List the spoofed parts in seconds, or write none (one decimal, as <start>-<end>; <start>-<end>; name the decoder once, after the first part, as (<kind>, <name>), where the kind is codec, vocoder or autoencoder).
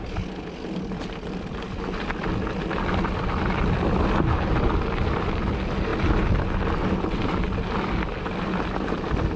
none